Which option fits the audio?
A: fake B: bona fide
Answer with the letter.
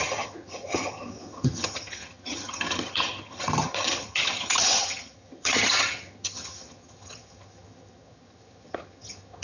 A